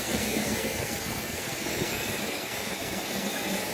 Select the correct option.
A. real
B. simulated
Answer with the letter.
B